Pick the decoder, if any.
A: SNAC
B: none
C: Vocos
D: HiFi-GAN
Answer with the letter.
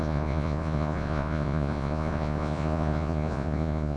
C